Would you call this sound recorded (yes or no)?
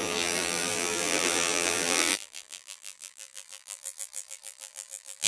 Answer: no